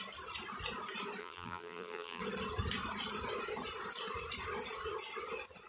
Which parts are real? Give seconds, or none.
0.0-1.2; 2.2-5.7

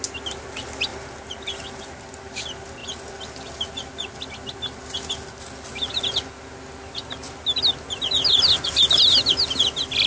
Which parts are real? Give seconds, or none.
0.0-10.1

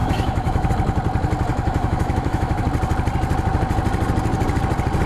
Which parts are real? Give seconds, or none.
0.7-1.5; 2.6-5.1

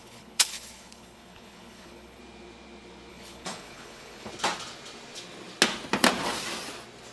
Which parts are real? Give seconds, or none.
2.2-3.1; 4.3-7.1

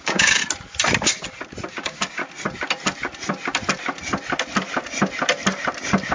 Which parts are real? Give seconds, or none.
0.4-1.7; 2.2-6.1

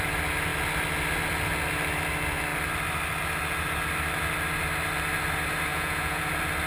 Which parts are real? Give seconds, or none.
0.0-5.7; 6.3-6.7

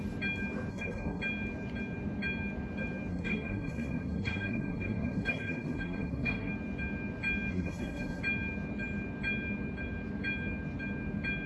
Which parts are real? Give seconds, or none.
0.0-0.7; 1.2-3.1; 6.5-7.5; 8.2-11.5

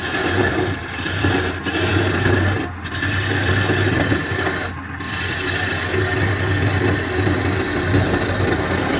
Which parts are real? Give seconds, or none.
0.0-9.0